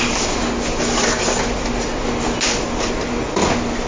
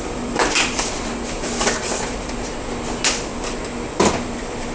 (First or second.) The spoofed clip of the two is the second